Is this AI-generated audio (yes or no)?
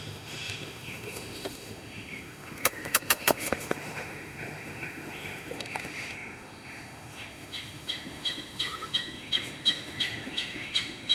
yes